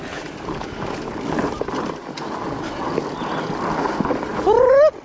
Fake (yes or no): no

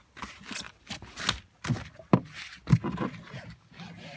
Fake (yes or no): no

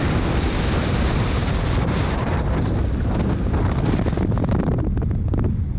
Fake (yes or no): no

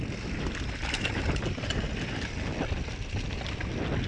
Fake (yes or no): no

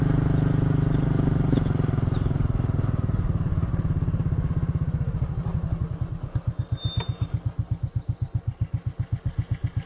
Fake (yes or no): no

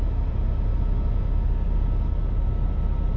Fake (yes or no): no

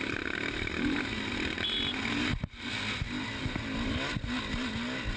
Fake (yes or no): no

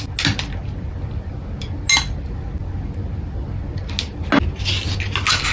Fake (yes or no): no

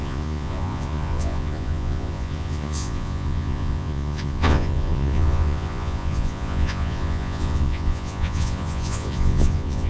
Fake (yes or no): yes